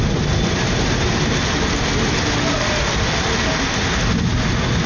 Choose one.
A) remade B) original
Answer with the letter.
B